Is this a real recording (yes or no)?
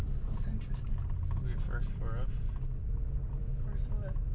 yes